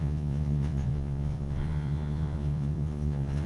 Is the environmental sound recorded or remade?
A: remade